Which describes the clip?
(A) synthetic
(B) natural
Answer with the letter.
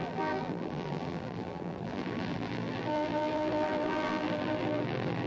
A